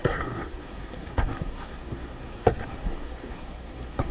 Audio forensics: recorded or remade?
remade